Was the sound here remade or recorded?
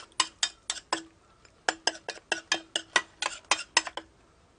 recorded